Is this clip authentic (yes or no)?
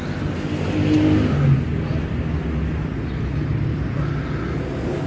yes